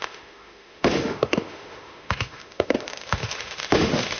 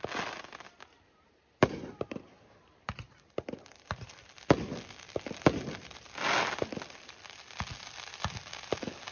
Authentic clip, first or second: second